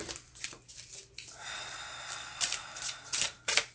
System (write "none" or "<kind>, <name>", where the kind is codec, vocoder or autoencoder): none